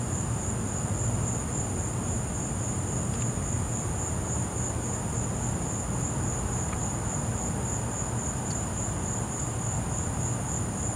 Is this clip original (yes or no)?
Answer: yes